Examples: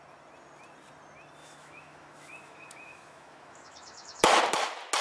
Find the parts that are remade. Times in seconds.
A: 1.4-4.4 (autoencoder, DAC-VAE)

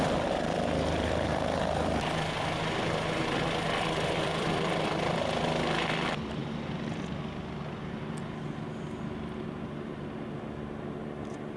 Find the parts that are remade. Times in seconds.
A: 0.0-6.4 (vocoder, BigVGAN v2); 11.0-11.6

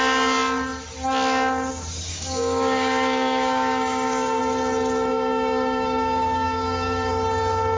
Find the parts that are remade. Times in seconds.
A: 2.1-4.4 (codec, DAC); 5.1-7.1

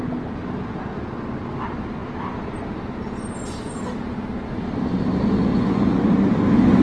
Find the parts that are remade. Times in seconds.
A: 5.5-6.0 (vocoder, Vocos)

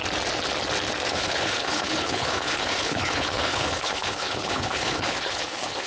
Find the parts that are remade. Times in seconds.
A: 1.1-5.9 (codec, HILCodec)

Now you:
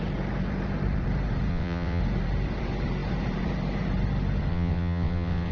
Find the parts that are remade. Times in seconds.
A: 1.5-2.0 (vocoder, WaveNeXt); 4.5-5.5

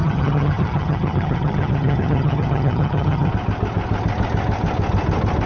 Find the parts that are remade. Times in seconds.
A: 0.0-3.3 (vocoder, HiFi-GAN)

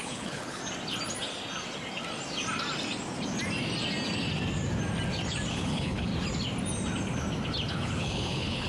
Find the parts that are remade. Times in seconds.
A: 0.0-0.6 (codec, HILCodec); 5.5-6.1; 7.7-8.7